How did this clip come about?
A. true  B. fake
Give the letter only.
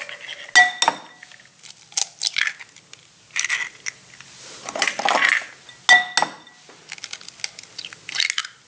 A